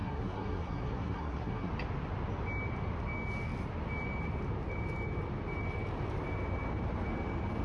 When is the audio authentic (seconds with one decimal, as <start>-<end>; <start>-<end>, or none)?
1.7-7.6